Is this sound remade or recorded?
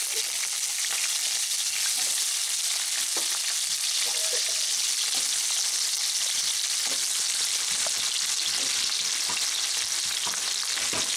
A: recorded